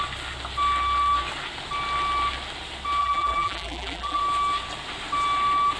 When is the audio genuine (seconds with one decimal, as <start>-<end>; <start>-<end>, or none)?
0.0-3.0; 4.2-5.8